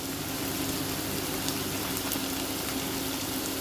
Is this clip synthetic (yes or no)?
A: no